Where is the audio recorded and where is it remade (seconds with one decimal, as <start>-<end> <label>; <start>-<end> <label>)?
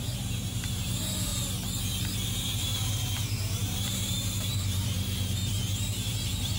0.0-1.3 remade; 1.3-2.4 recorded; 2.4-6.6 remade